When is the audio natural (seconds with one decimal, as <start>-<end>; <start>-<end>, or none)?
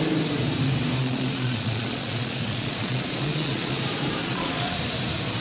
0.0-1.0; 3.8-4.2; 4.8-5.4